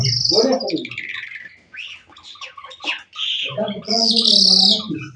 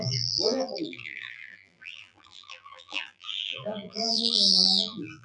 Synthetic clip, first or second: second